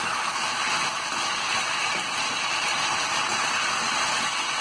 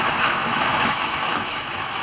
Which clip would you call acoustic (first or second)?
first